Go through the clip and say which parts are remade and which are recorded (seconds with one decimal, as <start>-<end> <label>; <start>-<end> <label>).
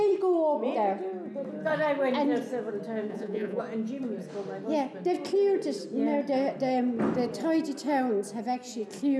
0.0-3.1 recorded; 3.1-3.6 remade; 3.6-9.2 recorded